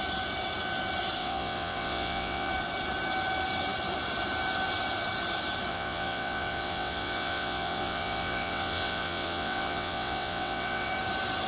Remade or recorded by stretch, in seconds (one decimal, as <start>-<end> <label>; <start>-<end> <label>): 0.0-1.2 recorded; 1.2-2.5 remade; 2.5-5.7 recorded; 5.7-10.9 remade; 10.9-11.5 recorded